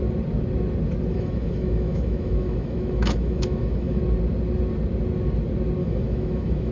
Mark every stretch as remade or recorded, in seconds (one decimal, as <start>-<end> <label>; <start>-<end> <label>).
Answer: 0.0-1.1 recorded; 1.1-4.0 remade; 4.0-5.8 recorded; 5.8-6.7 remade